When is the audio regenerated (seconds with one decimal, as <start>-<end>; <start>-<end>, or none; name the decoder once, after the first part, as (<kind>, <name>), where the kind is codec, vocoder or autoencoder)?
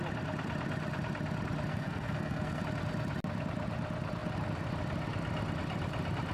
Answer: 1.7-2.6 (codec, SNAC)